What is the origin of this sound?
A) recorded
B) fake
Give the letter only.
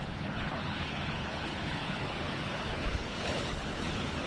B